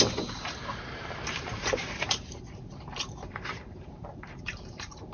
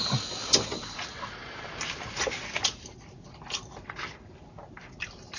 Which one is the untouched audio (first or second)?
second